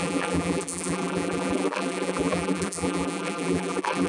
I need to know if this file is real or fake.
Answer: fake